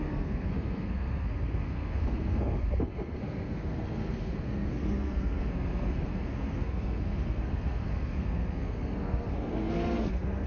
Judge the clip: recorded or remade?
remade